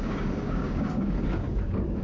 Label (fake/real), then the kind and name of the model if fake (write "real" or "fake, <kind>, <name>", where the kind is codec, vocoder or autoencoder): fake, codec, DAC